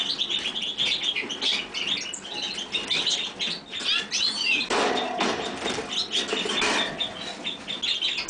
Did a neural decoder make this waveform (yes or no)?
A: no